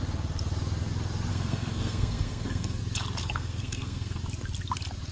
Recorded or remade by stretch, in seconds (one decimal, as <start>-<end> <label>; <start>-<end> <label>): 0.0-1.3 recorded; 1.3-2.8 remade; 2.8-3.2 recorded; 3.2-4.2 remade; 4.2-5.1 recorded